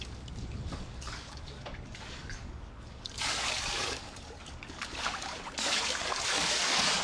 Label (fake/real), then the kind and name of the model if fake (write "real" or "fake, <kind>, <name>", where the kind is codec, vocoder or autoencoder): fake, codec, DAC